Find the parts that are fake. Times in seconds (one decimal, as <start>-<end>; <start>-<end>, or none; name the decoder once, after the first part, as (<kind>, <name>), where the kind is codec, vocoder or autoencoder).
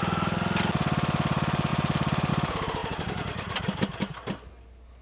1.7-2.3 (vocoder, BigVGAN v2)